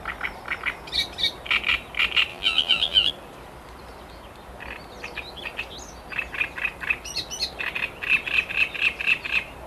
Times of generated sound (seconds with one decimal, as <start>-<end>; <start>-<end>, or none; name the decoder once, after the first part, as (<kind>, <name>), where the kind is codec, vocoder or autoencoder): 2.3-3.1 (vocoder, BigVGAN v2)